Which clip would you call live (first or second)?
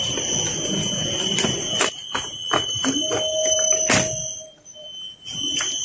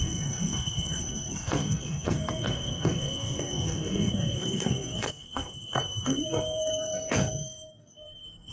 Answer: first